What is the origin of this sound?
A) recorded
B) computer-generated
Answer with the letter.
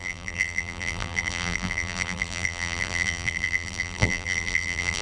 B